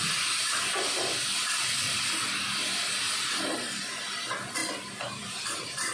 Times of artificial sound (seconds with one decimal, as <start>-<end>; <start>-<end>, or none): 4.6-5.3